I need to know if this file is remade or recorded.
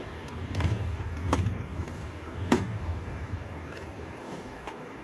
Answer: remade